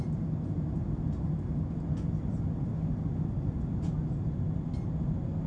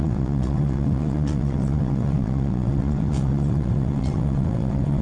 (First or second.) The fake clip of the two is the second